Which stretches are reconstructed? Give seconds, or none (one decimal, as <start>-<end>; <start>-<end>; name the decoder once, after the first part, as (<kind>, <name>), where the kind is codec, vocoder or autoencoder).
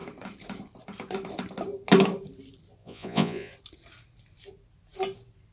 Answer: 2.8-3.5 (vocoder, Vocos)